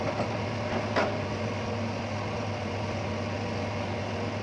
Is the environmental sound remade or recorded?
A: recorded